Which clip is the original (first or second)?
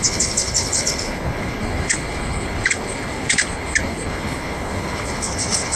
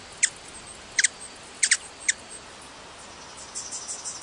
second